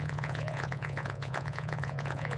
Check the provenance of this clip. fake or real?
fake